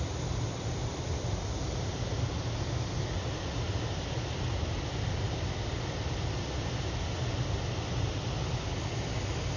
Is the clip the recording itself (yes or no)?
yes